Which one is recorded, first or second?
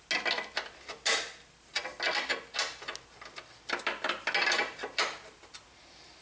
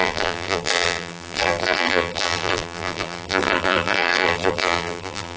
first